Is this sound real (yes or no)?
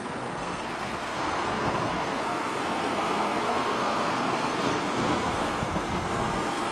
no